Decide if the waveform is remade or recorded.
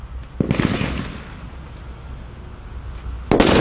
recorded